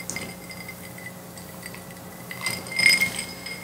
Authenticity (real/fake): real